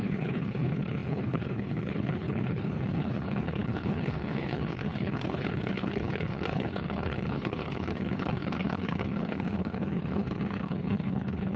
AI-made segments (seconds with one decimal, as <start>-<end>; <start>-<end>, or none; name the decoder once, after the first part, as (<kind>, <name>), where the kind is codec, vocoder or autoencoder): 0.0-11.6 (codec, HILCodec)